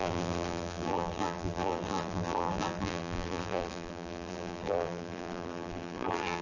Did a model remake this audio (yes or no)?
yes